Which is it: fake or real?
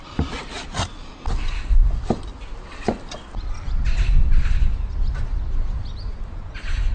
real